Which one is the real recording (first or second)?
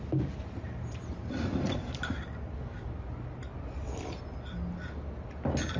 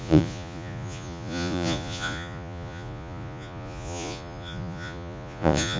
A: first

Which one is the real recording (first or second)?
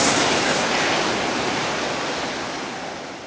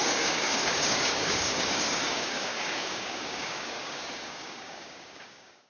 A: first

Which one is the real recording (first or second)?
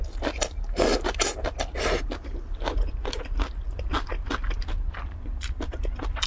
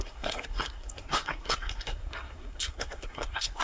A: first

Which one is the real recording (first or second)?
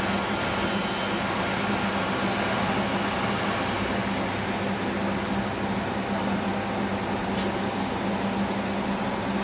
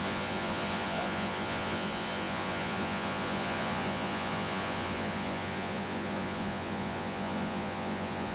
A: first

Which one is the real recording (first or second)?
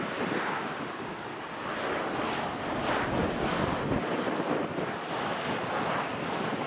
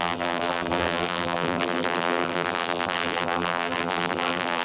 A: first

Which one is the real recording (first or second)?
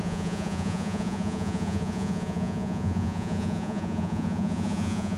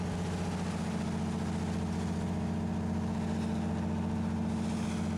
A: second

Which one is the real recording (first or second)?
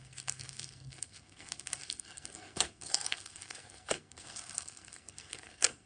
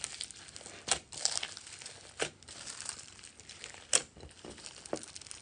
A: second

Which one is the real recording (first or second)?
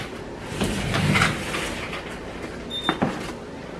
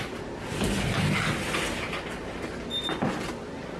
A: second